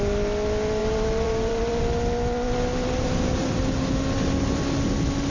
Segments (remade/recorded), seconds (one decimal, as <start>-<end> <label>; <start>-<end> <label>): 0.0-0.8 recorded; 0.8-1.8 remade; 1.8-3.0 recorded; 3.0-3.6 remade; 3.6-5.3 recorded